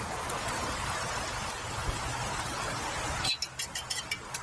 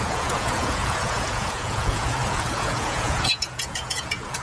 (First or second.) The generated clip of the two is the second